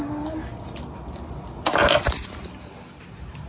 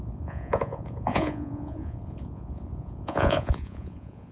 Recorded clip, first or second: first